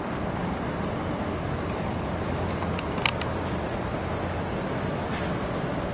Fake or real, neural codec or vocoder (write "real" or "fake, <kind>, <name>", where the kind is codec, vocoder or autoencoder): real